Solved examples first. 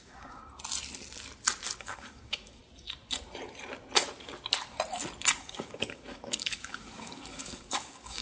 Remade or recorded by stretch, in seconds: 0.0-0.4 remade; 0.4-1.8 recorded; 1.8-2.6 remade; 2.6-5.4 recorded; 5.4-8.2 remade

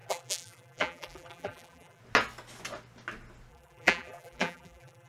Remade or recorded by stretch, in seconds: 0.0-2.0 remade; 2.0-3.5 recorded; 3.5-5.1 remade